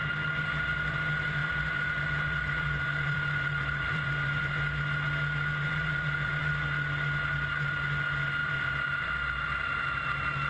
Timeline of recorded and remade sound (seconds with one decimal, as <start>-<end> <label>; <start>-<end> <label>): 0.0-1.4 recorded; 1.4-4.6 remade; 4.6-5.6 recorded; 5.6-6.5 remade; 6.5-8.4 recorded; 8.4-9.1 remade; 9.1-10.5 recorded